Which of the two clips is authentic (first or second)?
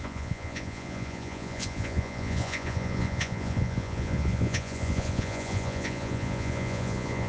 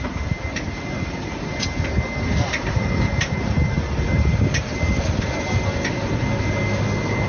second